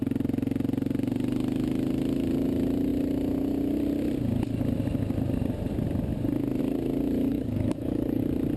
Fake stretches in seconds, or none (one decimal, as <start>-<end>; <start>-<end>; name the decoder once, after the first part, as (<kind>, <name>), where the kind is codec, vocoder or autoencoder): 7.3-8.2 (codec, DAC)